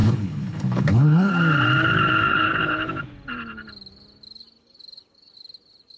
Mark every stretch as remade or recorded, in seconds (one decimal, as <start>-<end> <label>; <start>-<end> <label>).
0.0-1.3 remade; 1.3-2.3 recorded; 2.3-2.9 remade; 2.9-6.0 recorded